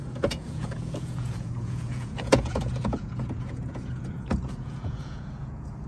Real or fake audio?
fake